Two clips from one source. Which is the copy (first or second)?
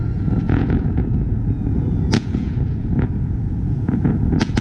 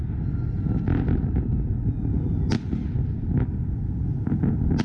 first